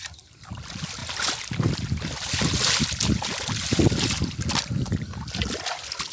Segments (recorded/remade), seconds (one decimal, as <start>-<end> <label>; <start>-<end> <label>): 0.0-6.1 recorded

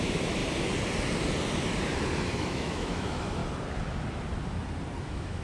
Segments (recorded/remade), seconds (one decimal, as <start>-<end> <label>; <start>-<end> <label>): 0.0-0.4 remade; 0.4-2.3 recorded; 2.3-3.4 remade; 3.4-5.0 recorded; 5.0-5.4 remade

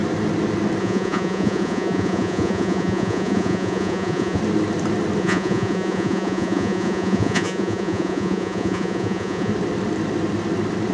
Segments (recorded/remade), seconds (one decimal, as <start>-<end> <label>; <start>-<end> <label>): 0.0-0.8 recorded; 0.8-4.4 remade; 4.4-5.2 recorded; 5.2-9.5 remade; 9.5-10.9 recorded